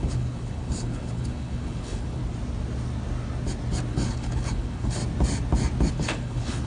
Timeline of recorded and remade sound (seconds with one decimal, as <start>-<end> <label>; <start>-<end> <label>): 0.0-2.2 remade; 2.2-3.9 recorded; 3.9-5.0 remade; 5.0-5.9 recorded; 5.9-6.7 remade